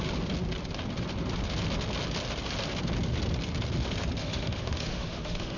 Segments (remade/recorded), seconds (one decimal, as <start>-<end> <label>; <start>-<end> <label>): 0.0-4.2 recorded; 4.2-5.6 remade